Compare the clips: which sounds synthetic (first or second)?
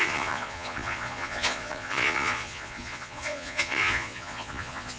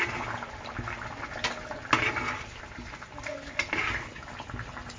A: first